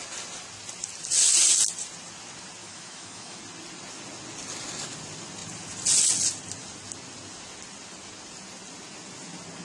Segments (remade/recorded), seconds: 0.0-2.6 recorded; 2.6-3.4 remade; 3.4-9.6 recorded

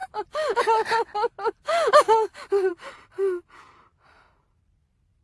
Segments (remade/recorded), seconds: 0.0-5.2 recorded

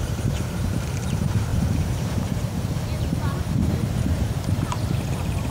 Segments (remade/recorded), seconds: 0.0-5.5 remade

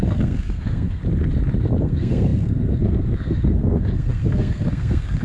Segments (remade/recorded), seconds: 0.0-1.0 remade; 1.0-1.8 recorded; 1.8-5.2 remade